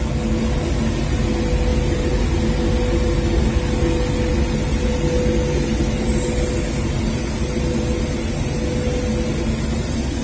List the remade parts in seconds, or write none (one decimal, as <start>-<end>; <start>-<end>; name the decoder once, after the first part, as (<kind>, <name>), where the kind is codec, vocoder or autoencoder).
none